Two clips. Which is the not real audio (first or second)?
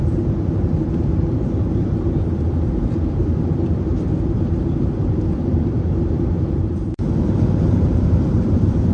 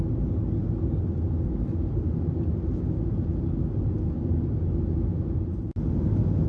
first